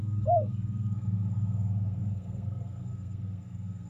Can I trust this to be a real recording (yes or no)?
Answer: no